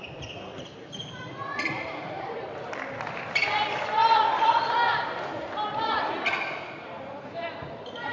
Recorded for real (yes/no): yes